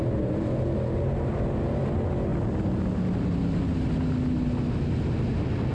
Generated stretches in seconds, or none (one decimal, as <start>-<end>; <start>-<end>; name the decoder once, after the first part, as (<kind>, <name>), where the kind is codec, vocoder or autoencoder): none